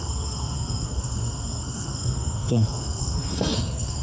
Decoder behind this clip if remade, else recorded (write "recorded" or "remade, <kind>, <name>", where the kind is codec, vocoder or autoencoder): remade, codec, SNAC